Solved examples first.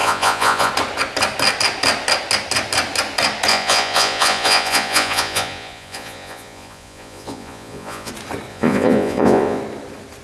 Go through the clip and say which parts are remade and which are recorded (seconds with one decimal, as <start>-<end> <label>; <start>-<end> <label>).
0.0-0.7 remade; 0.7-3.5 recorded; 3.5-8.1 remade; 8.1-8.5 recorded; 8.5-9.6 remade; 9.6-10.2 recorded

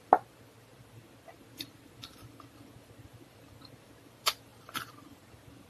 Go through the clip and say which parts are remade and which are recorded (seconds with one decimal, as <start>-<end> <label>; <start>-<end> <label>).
0.0-4.5 recorded; 4.5-5.2 remade; 5.2-5.7 recorded

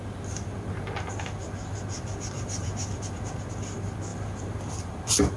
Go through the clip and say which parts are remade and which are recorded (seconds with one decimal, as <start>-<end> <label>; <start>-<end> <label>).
0.0-5.4 recorded

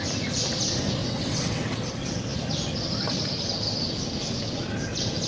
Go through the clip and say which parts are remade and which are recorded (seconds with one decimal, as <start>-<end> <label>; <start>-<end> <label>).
0.0-1.0 recorded; 1.0-1.9 remade; 1.9-5.3 recorded